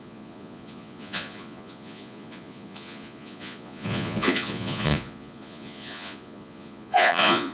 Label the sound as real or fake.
fake